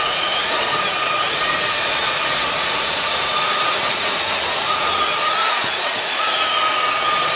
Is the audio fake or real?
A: fake